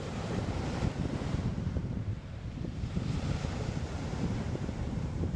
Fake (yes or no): yes